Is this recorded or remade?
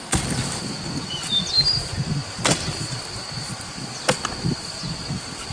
recorded